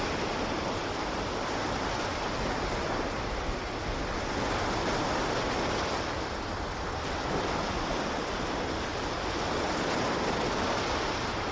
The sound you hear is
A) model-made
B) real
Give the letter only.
B